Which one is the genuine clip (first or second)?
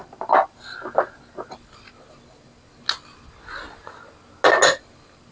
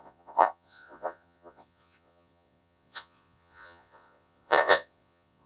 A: first